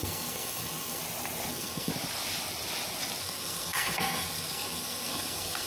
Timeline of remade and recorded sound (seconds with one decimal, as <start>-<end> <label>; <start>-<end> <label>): 0.0-1.0 remade; 1.0-1.5 recorded; 1.5-1.9 remade; 1.9-3.2 recorded; 3.2-5.7 remade